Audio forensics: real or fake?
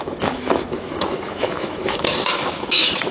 fake